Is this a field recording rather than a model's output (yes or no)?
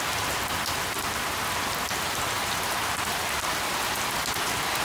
yes